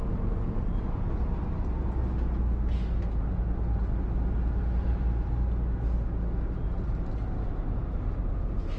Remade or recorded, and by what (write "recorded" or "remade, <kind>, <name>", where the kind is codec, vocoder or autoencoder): recorded